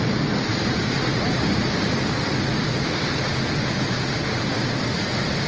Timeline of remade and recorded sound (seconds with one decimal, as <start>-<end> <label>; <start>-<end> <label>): 0.0-5.5 recorded